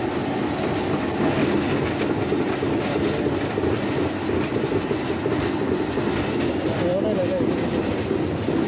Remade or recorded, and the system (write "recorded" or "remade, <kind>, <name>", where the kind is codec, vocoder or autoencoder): recorded